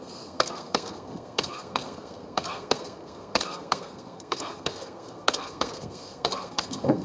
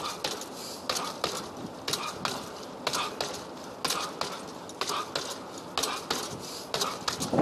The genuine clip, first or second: second